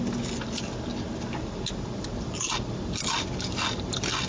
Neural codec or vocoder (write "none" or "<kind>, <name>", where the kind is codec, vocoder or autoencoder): none